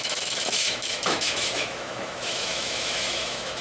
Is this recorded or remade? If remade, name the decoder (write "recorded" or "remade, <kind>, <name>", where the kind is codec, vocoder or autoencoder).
remade, autoencoder, DAC-VAE